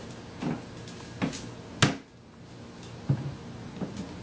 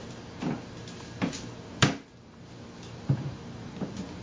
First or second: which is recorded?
first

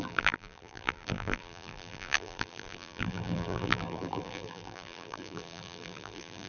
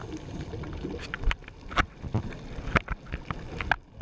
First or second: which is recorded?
second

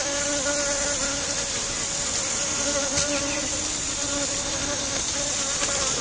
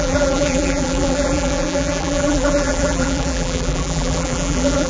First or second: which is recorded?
first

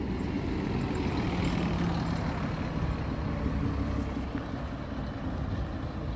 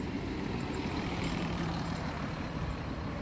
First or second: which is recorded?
first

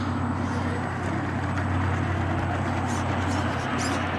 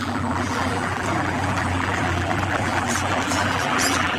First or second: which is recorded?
first